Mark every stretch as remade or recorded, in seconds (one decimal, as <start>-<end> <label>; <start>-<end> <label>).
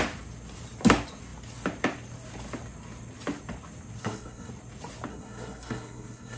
0.0-4.0 recorded; 4.0-4.5 remade; 4.5-5.1 recorded; 5.1-6.4 remade